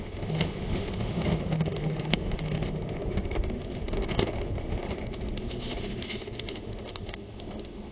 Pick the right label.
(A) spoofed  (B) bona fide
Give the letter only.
A